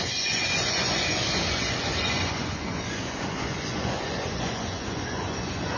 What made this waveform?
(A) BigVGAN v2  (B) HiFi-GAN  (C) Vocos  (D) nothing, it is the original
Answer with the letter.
C